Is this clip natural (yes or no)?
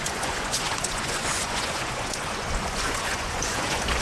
no